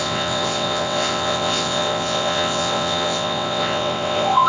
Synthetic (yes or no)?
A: yes